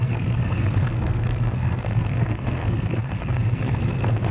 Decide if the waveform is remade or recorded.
remade